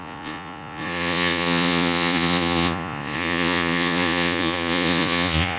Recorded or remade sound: remade